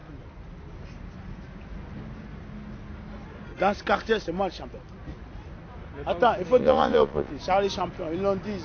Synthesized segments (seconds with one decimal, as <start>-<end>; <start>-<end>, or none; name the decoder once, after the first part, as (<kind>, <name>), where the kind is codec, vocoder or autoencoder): 6.6-7.3 (vocoder, Vocos)